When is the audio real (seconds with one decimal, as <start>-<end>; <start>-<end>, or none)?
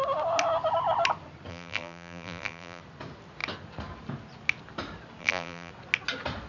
0.0-1.5; 2.8-5.2; 5.7-6.5